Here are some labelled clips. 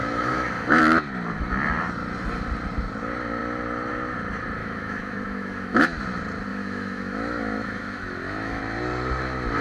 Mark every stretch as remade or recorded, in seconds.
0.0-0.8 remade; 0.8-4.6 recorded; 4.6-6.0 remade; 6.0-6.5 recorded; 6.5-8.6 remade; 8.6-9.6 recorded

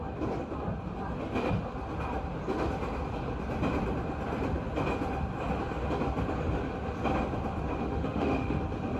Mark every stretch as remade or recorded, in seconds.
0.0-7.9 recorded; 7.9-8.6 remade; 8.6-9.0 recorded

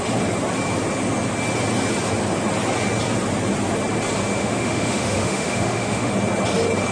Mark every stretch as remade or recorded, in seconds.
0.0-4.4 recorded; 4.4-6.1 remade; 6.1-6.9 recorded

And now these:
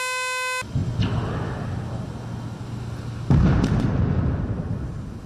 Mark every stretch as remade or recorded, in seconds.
0.0-5.3 recorded

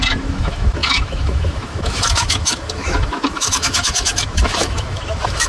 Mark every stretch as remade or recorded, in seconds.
0.0-5.5 remade